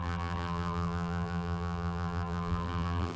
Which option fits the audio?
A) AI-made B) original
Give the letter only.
A